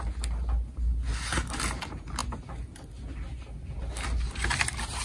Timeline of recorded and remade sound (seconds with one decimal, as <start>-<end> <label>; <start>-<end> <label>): 0.0-5.0 recorded